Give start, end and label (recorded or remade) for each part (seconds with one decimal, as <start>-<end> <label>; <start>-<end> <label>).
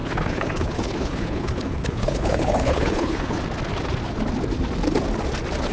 0.0-3.4 remade; 3.4-5.7 recorded